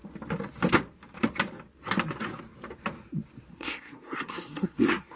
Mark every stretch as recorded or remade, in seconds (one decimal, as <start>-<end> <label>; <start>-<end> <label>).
0.0-3.5 recorded; 3.5-5.2 remade